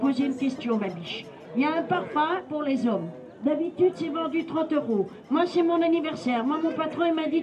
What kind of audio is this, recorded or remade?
recorded